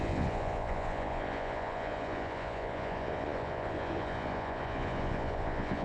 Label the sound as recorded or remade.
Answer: remade